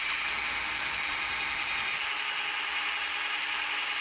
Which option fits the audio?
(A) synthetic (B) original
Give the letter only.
B